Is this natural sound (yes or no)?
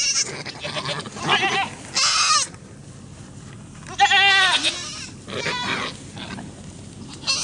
yes